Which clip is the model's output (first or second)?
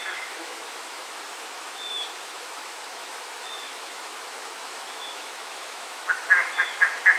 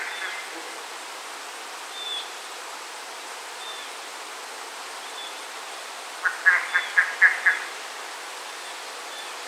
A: first